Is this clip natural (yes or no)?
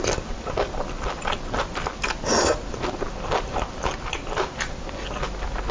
yes